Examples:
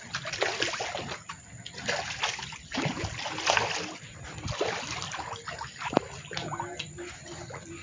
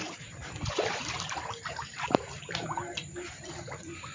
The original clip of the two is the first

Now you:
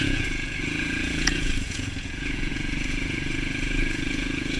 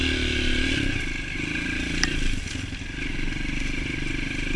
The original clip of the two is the second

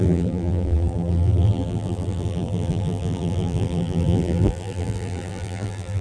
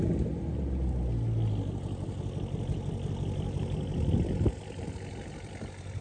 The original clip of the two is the second